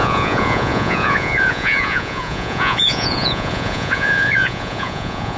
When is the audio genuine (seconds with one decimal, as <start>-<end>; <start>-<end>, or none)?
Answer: none